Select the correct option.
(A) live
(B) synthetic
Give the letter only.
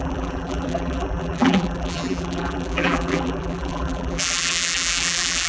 B